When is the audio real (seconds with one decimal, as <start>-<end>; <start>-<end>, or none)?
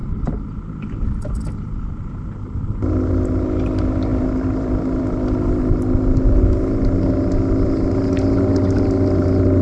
0.0-4.1; 5.6-9.6